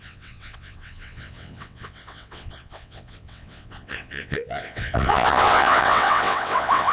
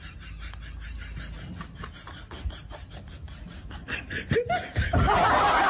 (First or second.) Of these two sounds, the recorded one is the second